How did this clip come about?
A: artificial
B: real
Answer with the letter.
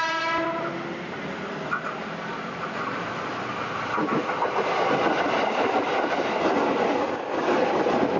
A